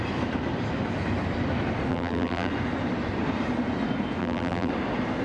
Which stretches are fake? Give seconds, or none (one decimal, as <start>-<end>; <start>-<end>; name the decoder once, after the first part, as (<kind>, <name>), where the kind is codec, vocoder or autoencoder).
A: 1.9-2.5 (vocoder, BigVGAN v2); 4.2-4.7